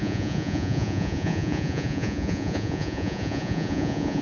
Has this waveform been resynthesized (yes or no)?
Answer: yes